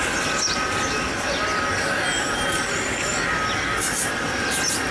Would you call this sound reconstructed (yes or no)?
no